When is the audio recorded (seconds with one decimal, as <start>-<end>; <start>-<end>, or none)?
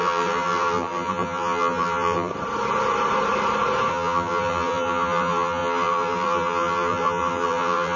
2.3-3.9